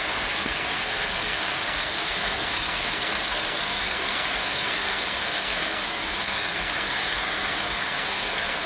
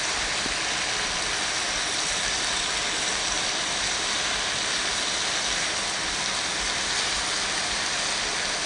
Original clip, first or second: second